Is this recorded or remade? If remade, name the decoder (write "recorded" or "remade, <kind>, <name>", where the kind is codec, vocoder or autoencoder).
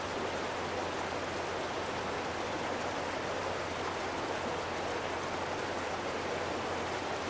recorded